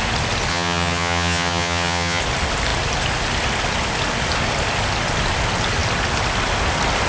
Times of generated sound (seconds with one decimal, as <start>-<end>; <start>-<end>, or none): 0.5-2.2